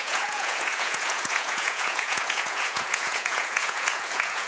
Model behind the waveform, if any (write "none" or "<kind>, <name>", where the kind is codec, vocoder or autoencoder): vocoder, Vocos